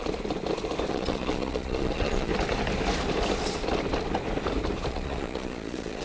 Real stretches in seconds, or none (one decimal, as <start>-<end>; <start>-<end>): 0.0-0.9; 2.3-4.9